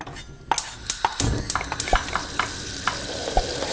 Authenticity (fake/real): real